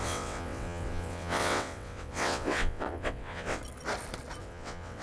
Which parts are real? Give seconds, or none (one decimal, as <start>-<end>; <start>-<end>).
3.6-4.4